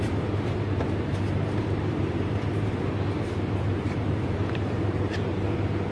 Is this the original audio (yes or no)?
no